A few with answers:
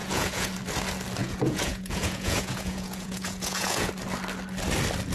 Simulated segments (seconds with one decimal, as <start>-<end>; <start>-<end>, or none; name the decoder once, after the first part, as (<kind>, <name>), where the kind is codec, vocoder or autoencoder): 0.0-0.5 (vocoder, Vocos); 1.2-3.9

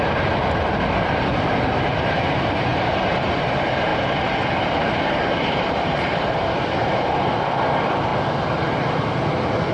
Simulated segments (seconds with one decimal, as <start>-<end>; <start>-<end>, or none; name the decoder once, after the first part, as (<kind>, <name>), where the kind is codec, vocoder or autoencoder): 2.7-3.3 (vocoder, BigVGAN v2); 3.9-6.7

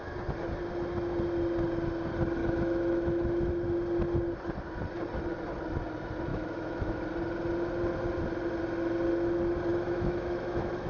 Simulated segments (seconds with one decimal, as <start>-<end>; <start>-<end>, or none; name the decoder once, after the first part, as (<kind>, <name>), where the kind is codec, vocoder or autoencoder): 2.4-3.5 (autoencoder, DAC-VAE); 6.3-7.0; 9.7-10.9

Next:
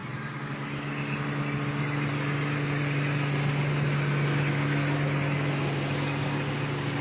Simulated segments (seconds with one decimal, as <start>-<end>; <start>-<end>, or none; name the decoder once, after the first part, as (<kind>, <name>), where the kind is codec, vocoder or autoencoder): none

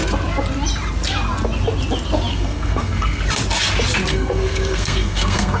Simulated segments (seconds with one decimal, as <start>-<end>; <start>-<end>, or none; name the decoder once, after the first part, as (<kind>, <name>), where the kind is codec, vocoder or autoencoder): 2.3-3.2 (codec, SNAC); 4.1-5.6